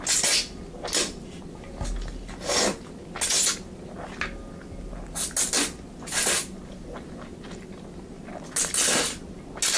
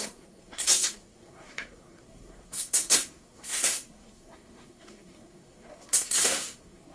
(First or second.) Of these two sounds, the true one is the first